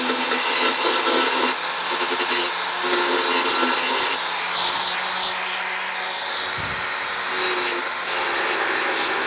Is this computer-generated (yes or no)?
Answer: no